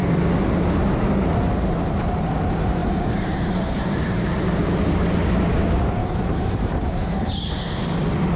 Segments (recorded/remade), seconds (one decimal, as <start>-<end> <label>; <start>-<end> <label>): 0.0-2.8 recorded; 2.8-4.8 remade; 4.8-6.0 recorded; 6.0-6.8 remade; 6.8-8.4 recorded